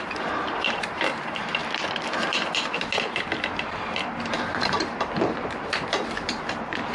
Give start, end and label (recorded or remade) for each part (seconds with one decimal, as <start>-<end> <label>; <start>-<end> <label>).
0.0-1.6 remade; 1.6-4.3 recorded; 4.3-6.9 remade

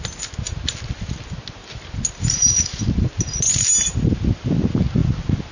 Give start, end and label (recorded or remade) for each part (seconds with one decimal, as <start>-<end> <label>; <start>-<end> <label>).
0.0-5.5 recorded

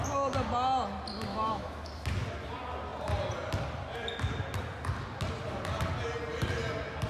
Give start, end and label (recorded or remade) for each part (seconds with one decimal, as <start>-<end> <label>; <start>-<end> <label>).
0.0-1.3 recorded; 1.3-1.9 remade; 1.9-7.1 recorded

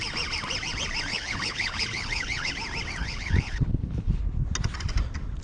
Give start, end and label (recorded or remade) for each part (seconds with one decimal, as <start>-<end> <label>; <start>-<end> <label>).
0.0-1.1 recorded; 1.1-2.5 remade; 2.5-3.0 recorded; 3.0-4.2 remade; 4.2-5.4 recorded

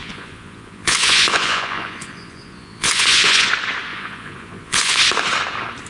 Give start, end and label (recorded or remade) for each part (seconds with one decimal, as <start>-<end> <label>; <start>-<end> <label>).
0.0-3.5 remade; 3.5-3.9 recorded; 3.9-5.0 remade; 5.0-5.9 recorded

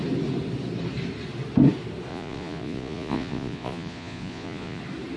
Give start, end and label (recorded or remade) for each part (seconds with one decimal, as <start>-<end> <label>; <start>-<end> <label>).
0.0-2.1 recorded; 2.1-4.8 remade; 4.8-5.2 recorded

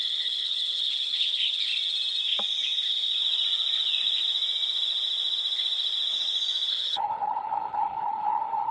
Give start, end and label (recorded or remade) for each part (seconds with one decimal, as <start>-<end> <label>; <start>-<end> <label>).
0.0-1.7 remade; 1.7-6.7 recorded; 6.7-8.7 remade